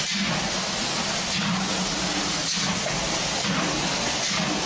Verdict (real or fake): real